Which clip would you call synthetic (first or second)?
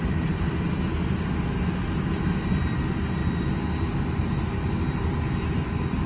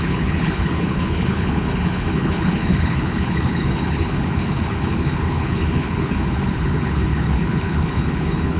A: second